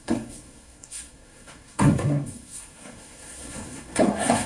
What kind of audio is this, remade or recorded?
remade